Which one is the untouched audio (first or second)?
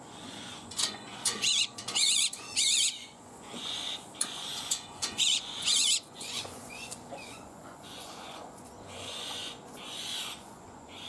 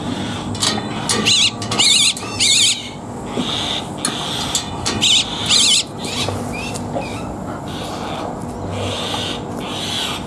second